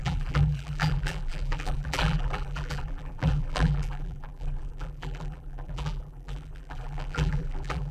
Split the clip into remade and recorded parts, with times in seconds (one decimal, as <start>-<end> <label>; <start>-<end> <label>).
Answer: 0.0-7.9 remade